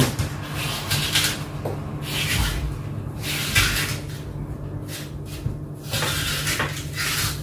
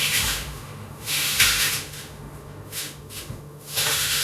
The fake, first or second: second